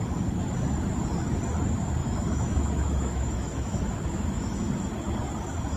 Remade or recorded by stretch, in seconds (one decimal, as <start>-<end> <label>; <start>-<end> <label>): 0.0-2.0 recorded; 2.0-4.7 remade; 4.7-5.8 recorded